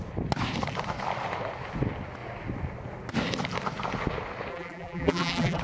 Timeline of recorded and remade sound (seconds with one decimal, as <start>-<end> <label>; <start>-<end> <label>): 0.0-4.5 recorded; 4.5-5.6 remade